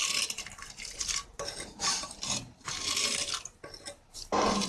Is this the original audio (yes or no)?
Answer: yes